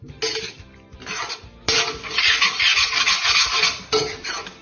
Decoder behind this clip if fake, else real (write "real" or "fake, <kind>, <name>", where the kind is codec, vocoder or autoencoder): real